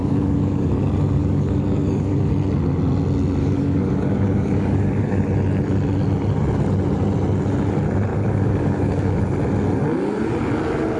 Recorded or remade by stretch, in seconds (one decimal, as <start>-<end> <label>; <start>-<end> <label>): 0.0-0.7 remade; 0.7-1.2 recorded; 1.2-2.3 remade; 2.3-3.4 recorded; 3.4-5.2 remade; 5.2-8.1 recorded; 8.1-9.2 remade; 9.2-11.0 recorded